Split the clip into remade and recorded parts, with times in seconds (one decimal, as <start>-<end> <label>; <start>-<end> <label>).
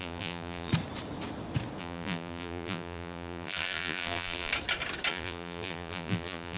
0.0-0.7 remade; 0.7-1.8 recorded; 1.8-4.5 remade; 4.5-5.1 recorded; 5.1-6.6 remade